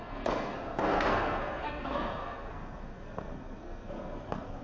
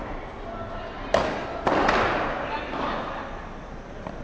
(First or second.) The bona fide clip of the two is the second